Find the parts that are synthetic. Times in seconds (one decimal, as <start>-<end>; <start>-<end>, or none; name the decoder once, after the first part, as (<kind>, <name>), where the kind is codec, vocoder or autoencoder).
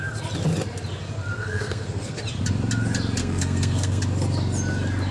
1.3-2.2 (codec, SNAC); 3.2-4.0